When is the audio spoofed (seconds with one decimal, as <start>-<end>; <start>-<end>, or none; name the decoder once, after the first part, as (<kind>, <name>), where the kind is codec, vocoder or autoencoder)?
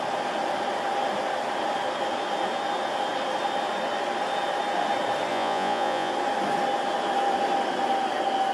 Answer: 5.3-6.1 (vocoder, Vocos)